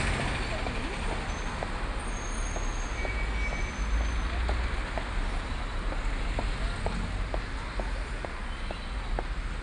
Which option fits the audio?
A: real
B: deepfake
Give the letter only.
A